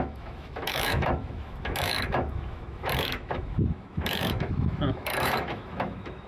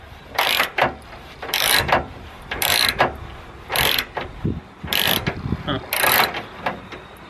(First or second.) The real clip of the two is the second